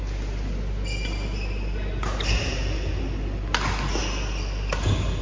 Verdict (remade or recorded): recorded